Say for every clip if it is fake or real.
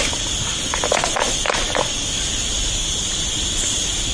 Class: real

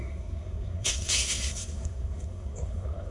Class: fake